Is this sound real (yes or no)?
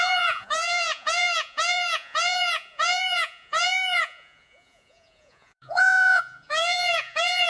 no